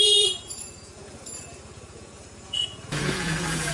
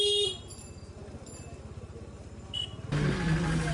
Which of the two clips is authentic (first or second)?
second